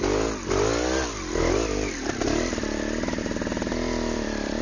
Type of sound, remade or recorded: remade